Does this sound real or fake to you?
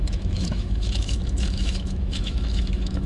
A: fake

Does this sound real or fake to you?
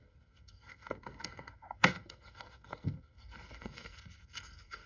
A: fake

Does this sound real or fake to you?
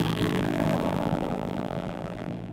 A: fake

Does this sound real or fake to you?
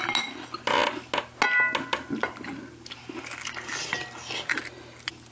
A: real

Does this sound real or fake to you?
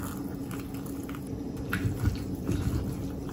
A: real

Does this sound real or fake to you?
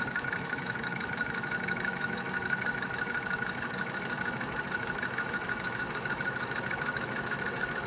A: fake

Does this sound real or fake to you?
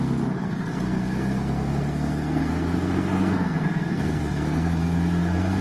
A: fake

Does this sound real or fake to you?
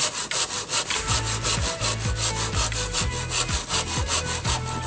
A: real